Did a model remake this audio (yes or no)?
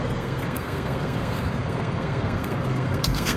yes